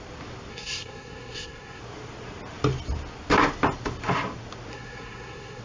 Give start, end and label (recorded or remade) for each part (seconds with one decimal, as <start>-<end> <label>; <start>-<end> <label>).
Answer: 0.0-0.5 recorded; 0.5-1.8 remade; 1.8-4.7 recorded; 4.7-5.6 remade